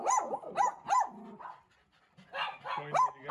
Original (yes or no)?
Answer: yes